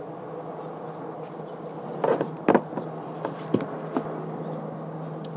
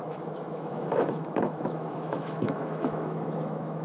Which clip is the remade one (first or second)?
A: second